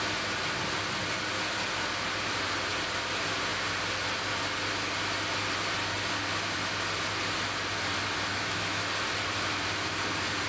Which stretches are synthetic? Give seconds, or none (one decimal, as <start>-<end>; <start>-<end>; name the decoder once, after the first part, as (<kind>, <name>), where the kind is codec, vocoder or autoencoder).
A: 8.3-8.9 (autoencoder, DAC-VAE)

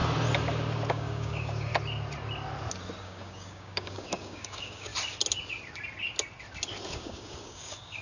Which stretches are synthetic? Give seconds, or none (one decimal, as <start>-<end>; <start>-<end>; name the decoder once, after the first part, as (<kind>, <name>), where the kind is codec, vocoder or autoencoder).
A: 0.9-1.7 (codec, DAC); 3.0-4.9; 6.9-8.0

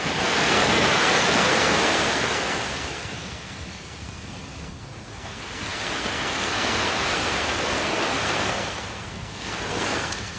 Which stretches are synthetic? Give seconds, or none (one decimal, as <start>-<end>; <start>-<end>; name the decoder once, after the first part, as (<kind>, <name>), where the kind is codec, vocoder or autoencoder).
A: 0.0-10.4 (codec, SNAC)

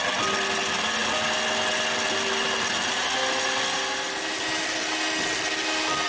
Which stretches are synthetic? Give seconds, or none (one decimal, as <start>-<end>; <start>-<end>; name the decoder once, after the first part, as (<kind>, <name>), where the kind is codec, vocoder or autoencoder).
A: none

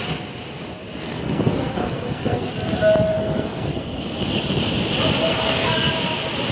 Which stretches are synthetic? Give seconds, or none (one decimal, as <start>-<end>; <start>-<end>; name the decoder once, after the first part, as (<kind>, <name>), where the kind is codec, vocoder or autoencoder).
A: 1.1-2.5 (codec, SNAC); 3.1-4.4; 5.2-5.9

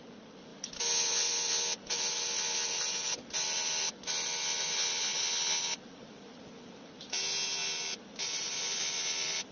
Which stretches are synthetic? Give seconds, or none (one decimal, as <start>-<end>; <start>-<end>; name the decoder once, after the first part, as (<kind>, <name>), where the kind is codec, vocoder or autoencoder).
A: none

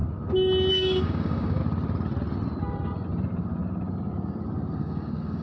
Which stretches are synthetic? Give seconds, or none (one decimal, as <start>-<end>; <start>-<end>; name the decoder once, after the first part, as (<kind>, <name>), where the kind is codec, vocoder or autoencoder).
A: 0.7-1.6 (codec, DAC); 4.8-5.4

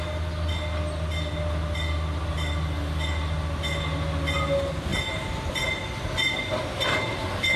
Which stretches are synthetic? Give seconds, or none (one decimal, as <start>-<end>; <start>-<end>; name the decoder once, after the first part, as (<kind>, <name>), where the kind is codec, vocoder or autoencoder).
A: none